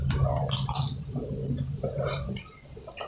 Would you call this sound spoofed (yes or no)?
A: no